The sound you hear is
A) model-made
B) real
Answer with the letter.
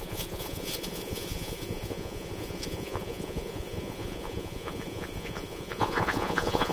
A